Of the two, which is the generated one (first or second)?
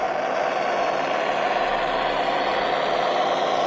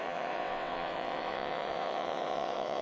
second